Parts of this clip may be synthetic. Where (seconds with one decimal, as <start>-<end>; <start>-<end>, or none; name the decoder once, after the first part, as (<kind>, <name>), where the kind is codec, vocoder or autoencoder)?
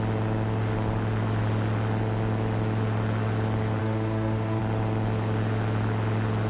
3.8-4.6 (autoencoder, DAC-VAE)